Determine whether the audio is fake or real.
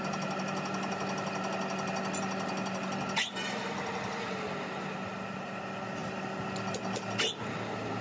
real